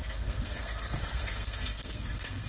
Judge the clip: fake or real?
fake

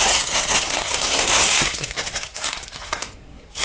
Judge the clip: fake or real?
fake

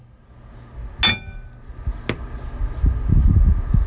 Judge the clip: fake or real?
real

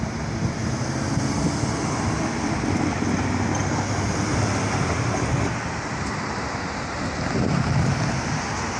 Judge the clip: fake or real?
real